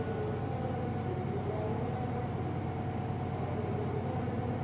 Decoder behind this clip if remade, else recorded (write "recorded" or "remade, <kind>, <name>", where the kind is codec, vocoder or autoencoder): recorded